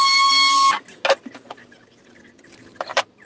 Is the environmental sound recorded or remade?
recorded